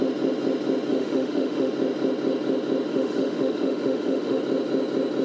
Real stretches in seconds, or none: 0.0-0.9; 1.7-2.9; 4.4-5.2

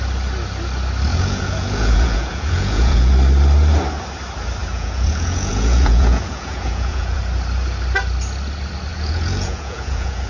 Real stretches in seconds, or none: 0.0-1.1; 3.1-4.6; 7.2-8.9

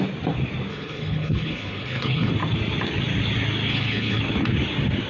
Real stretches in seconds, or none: 0.0-0.7; 2.3-3.7; 4.2-5.1